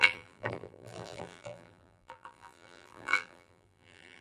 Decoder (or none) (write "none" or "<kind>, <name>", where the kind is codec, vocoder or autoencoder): vocoder, BigVGAN v2